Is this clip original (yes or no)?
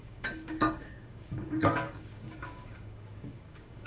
no